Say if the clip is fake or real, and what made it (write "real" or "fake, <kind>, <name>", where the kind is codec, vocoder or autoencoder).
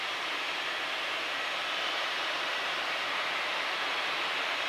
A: fake, vocoder, BigVGAN v2